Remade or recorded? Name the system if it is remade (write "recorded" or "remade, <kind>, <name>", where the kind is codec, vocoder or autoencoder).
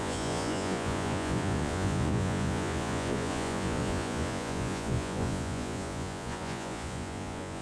remade, vocoder, Vocos